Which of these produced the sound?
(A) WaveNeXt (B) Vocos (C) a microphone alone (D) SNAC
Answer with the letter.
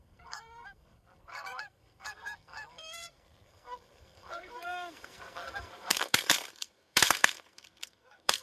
D